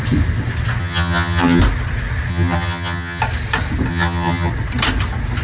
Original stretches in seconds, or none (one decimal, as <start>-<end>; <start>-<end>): 0.0-0.8; 1.6-2.3; 3.2-3.9; 4.5-5.4